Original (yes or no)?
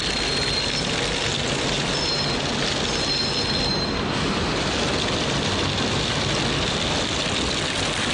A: yes